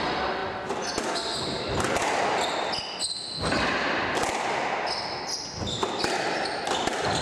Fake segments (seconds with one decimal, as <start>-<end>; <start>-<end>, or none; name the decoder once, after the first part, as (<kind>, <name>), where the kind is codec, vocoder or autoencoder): none